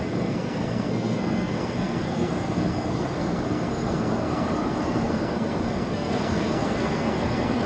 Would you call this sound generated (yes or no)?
yes